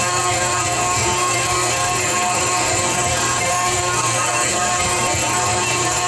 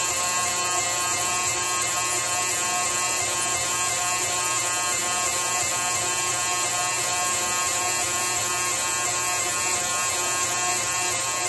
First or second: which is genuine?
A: second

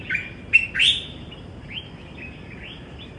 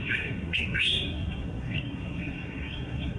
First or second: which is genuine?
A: first